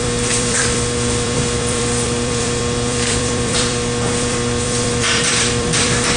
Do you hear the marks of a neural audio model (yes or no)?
yes